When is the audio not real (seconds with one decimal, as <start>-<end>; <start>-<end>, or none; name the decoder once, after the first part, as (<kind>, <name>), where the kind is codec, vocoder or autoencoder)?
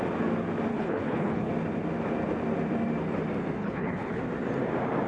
0.7-1.5 (codec, HILCodec); 3.6-4.2